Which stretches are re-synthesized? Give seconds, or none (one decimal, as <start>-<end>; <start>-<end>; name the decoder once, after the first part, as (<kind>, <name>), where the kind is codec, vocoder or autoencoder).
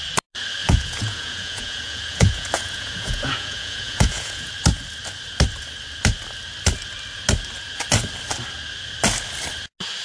0.6-4.5 (vocoder, Vocos)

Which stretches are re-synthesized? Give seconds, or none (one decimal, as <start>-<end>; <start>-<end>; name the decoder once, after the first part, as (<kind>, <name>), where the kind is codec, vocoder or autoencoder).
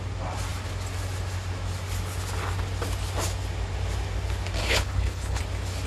4.6-5.4 (codec, HILCodec)